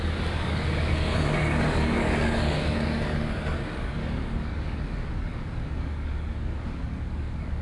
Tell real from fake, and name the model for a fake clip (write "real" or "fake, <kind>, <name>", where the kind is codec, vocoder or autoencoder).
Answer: fake, codec, DAC